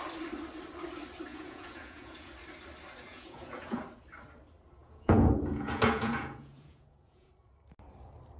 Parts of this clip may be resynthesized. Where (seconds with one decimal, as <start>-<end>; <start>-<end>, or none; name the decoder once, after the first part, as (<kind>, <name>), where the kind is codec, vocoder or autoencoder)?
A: 1.3-2.3 (vocoder, Vocos); 3.1-3.8; 4.8-7.3